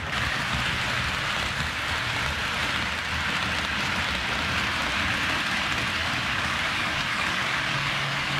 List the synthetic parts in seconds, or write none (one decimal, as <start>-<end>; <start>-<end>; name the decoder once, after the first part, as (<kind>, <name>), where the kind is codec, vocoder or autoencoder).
5.9-8.4 (codec, DAC)